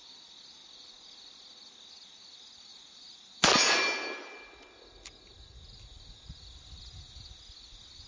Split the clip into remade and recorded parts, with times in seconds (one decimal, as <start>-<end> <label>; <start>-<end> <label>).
0.0-8.1 recorded